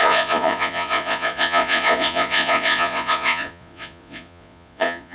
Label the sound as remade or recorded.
remade